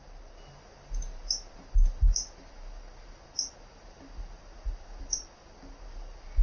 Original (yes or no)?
yes